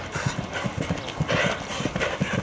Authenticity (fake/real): real